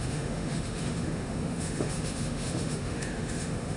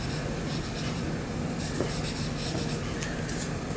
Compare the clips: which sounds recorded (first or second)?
second